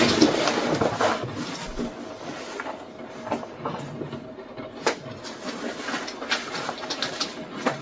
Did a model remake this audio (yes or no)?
no